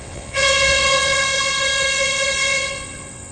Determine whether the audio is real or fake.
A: fake